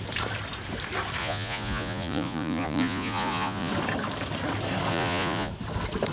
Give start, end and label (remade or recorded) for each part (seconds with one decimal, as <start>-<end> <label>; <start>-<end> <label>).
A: 0.0-1.2 recorded; 1.2-3.7 remade; 3.7-4.9 recorded; 4.9-5.5 remade; 5.5-6.1 recorded